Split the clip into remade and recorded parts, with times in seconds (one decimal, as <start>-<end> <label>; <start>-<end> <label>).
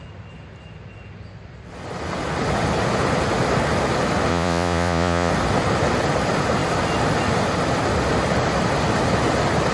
0.0-4.3 recorded; 4.3-5.3 remade; 5.3-9.7 recorded